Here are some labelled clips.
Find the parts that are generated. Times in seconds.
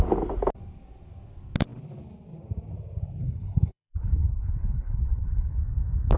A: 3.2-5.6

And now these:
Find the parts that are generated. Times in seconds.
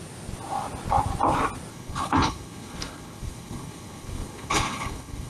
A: 1.7-5.3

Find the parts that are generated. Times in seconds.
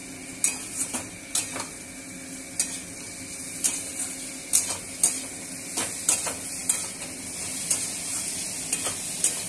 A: none